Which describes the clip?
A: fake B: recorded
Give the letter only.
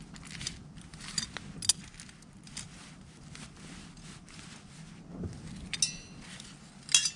B